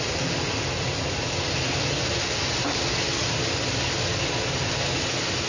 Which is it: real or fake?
real